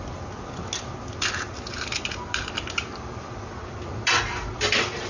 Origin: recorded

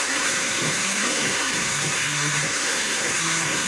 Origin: remade